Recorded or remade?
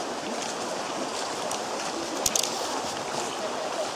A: recorded